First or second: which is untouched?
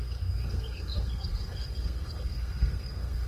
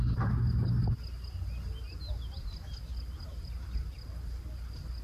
second